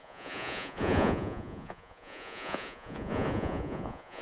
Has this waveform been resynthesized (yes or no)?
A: yes